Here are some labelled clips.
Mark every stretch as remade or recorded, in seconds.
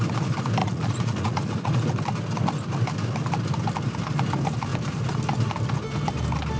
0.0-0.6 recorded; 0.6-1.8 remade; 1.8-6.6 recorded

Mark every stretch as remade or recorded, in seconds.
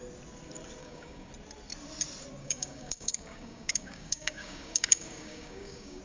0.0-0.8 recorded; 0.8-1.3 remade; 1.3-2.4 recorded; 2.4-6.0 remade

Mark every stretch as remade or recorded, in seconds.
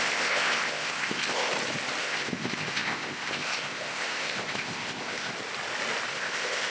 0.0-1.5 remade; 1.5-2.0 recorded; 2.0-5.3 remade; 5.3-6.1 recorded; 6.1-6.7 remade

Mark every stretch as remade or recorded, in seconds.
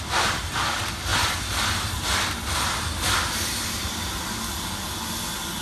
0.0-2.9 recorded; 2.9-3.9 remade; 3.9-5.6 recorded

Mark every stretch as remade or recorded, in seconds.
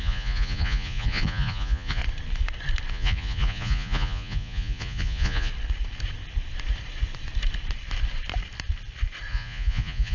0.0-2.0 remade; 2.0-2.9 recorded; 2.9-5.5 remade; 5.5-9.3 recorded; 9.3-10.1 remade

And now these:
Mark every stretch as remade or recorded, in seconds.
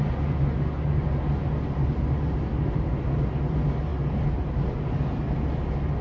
0.0-3.9 recorded; 3.9-4.5 remade; 4.5-6.0 recorded